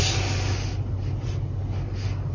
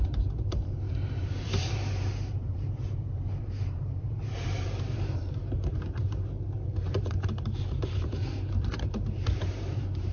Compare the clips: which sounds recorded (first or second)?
first